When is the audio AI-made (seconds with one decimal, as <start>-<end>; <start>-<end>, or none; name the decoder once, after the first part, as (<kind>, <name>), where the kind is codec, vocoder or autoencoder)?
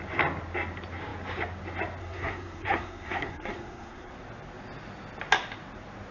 2.0-4.1 (codec, SNAC)